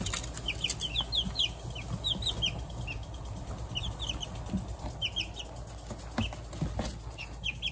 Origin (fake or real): real